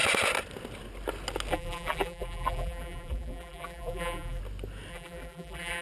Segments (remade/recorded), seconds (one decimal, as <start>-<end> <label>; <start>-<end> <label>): 0.0-1.5 recorded; 1.5-4.4 remade; 4.4-4.9 recorded; 4.9-5.8 remade